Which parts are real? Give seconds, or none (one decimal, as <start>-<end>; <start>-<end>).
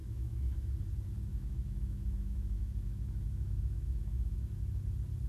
0.7-1.3; 4.5-5.3